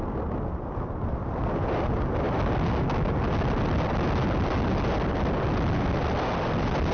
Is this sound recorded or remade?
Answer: recorded